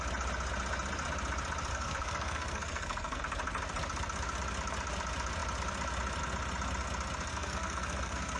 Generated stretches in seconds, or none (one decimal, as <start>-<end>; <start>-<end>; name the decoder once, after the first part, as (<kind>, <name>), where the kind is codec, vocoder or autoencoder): 1.7-3.2 (codec, SNAC); 7.3-8.4